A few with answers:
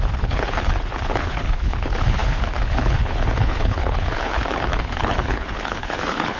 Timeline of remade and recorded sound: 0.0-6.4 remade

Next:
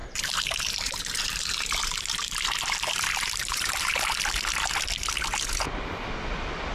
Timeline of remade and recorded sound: 0.0-4.0 remade; 4.0-6.7 recorded

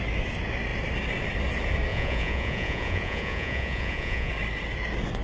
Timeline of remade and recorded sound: 0.0-1.9 recorded; 1.9-4.3 remade; 4.3-5.2 recorded

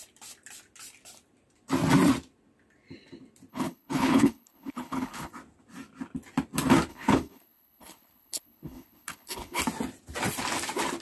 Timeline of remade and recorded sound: 0.0-3.5 recorded; 3.5-5.3 remade; 5.3-6.9 recorded; 6.9-9.6 remade; 9.6-11.0 recorded